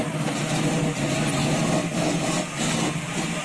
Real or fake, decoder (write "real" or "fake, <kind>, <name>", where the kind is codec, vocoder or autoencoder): real